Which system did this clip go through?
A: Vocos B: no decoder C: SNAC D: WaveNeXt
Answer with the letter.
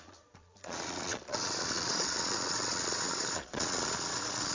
A